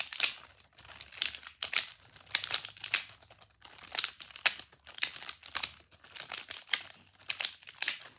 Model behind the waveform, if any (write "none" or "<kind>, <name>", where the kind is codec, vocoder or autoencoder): none